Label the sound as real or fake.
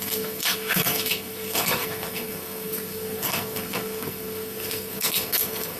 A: fake